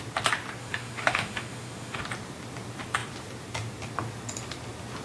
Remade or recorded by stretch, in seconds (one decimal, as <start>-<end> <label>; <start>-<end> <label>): 0.0-0.6 recorded; 0.6-2.0 remade; 2.0-5.0 recorded